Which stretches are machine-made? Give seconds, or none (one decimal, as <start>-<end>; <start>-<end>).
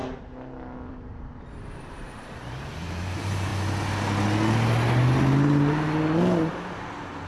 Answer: 0.9-3.5; 6.5-7.3